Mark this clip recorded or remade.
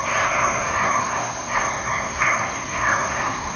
remade